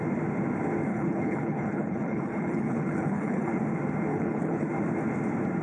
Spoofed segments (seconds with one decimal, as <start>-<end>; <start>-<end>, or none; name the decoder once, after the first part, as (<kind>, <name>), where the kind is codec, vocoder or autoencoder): 0.9-3.6 (codec, HILCodec); 4.1-4.7